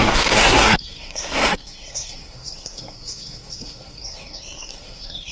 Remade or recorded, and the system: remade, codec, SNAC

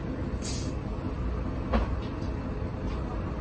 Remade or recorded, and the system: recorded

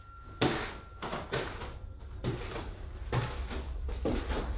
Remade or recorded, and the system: recorded